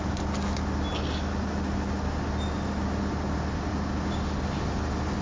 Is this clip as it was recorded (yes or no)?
yes